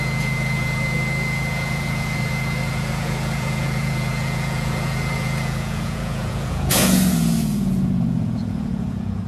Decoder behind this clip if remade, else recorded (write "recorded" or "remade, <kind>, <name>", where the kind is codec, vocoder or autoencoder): remade, vocoder, Vocos